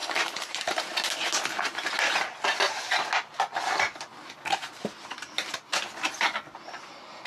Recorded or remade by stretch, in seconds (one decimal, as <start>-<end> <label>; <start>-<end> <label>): 0.0-0.9 remade; 0.9-7.3 recorded